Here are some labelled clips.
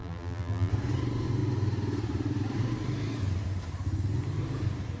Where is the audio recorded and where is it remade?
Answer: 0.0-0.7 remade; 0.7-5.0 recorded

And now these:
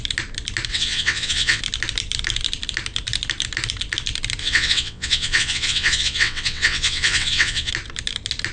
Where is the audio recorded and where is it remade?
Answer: 0.0-0.7 recorded; 0.7-1.6 remade; 1.6-4.4 recorded; 4.4-7.7 remade; 7.7-8.5 recorded